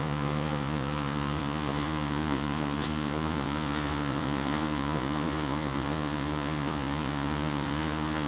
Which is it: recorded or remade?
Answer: remade